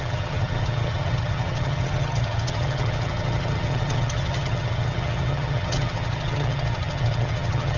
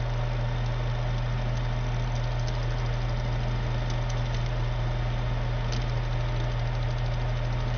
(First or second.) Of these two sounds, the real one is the second